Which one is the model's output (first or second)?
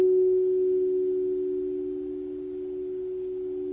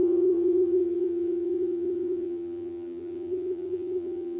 second